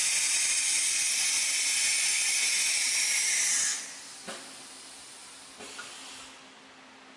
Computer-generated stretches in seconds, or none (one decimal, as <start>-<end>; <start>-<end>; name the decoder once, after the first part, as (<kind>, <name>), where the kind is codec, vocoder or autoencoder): none